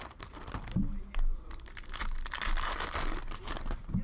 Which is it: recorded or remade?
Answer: recorded